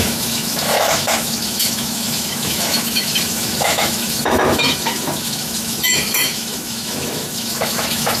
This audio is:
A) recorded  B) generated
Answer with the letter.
B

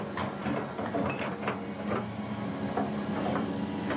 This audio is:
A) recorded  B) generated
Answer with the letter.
A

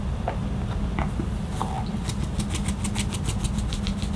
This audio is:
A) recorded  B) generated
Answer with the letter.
A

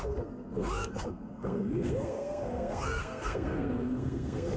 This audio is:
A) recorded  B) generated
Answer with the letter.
B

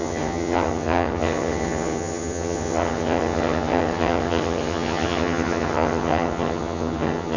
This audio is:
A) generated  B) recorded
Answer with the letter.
A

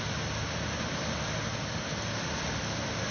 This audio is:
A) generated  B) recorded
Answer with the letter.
B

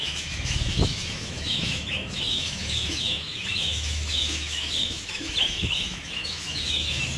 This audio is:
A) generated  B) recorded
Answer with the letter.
A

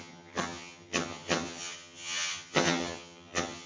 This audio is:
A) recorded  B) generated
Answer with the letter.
B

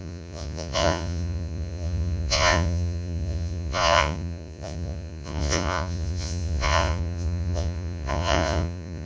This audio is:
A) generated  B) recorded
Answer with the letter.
A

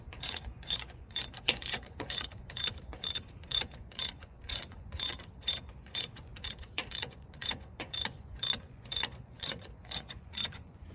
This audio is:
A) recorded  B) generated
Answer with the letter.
B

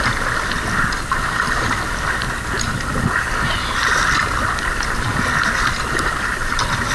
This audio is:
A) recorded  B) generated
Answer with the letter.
A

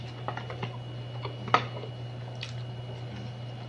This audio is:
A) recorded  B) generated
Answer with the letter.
A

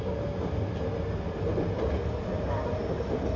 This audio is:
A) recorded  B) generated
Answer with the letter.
A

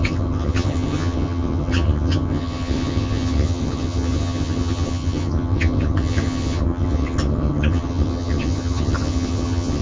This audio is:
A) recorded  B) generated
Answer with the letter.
B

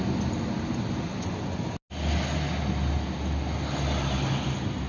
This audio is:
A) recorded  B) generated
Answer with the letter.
A